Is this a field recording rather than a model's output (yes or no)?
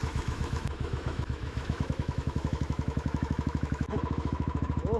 no